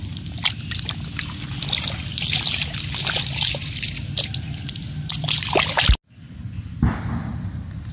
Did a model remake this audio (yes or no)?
no